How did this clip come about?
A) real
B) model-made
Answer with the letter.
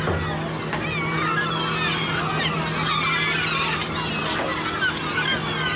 A